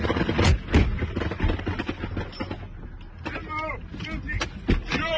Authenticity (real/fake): real